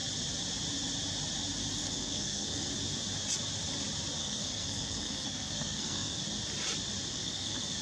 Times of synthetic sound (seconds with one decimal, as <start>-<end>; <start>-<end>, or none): 1.8-2.7; 4.2-6.2; 7.1-7.8